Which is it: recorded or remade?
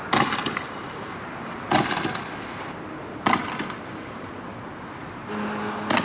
recorded